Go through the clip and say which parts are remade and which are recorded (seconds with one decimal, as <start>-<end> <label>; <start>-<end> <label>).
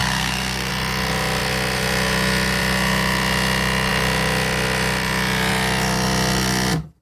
0.0-0.7 remade; 0.7-7.0 recorded